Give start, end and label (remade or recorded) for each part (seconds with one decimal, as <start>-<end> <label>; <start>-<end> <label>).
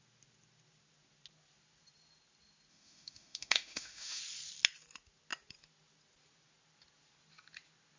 0.0-2.7 recorded; 2.7-4.2 remade; 4.2-8.0 recorded